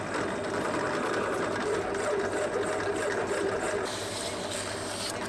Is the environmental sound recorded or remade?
recorded